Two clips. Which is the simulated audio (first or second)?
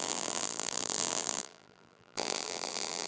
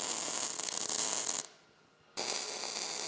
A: first